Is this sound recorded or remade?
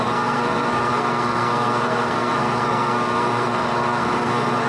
remade